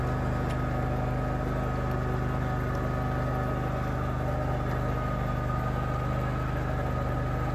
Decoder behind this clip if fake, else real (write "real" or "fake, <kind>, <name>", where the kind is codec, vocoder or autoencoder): real